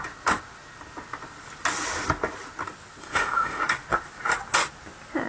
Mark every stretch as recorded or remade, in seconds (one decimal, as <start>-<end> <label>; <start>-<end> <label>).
0.0-3.0 recorded; 3.0-3.6 remade; 3.6-5.3 recorded